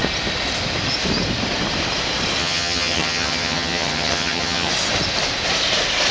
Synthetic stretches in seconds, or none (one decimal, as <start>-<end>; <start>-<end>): 2.4-4.7